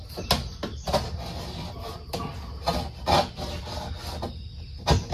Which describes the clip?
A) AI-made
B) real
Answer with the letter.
B